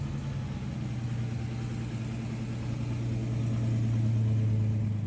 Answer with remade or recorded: recorded